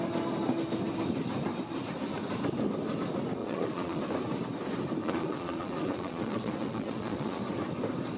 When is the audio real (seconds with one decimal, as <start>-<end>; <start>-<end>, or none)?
0.0-3.4; 4.0-5.0; 7.4-8.2